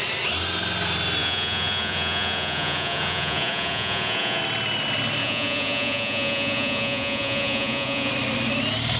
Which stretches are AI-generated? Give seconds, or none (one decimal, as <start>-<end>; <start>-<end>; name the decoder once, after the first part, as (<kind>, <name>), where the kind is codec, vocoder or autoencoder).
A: 1.2-4.4 (vocoder, Vocos); 5.2-8.1